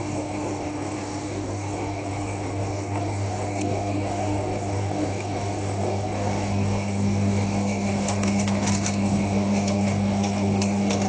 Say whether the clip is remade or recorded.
remade